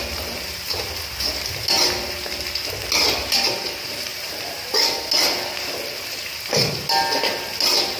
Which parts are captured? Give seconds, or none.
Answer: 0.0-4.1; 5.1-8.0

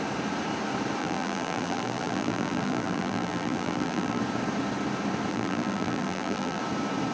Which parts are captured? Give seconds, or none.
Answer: 0.0-1.0; 4.2-5.3; 6.6-7.1

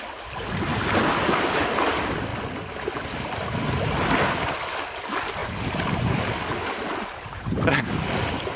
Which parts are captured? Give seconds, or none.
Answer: 0.0-5.4; 6.3-6.9; 7.8-8.6

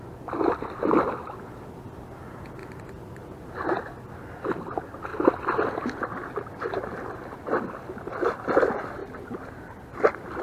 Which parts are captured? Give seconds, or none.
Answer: 0.0-2.6; 3.9-9.0; 9.6-10.4

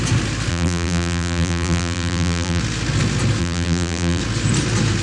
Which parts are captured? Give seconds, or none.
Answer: 0.0-0.5; 2.6-3.4; 4.2-5.0

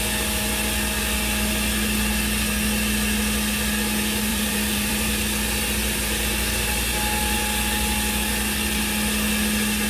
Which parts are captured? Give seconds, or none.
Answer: 0.0-4.3; 5.1-9.9

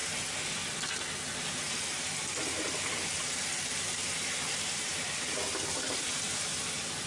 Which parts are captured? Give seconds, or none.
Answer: 0.0-1.8